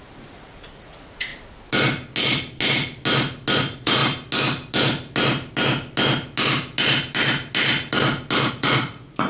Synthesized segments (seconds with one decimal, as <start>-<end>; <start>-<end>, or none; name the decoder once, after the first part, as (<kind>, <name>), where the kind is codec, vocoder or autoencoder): 0.0-1.3 (vocoder, Vocos); 3.6-4.0; 8.5-9.3